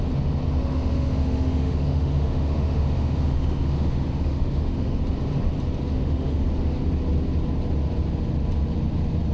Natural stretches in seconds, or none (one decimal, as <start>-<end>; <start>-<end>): 0.0-0.6; 5.0-5.9; 6.5-9.3